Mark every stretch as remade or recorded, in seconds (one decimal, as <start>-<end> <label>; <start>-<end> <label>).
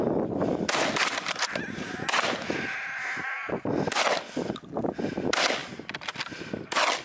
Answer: 0.0-7.0 recorded